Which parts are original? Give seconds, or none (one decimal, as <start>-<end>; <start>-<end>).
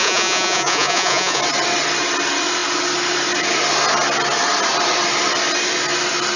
1.4-6.4